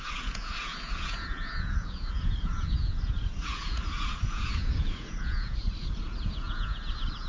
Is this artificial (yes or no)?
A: yes